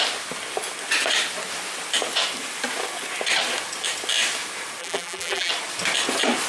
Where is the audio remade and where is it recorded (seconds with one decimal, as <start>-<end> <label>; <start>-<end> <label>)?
0.0-4.8 recorded; 4.8-5.5 remade; 5.5-6.5 recorded